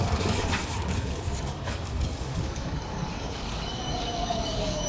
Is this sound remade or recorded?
remade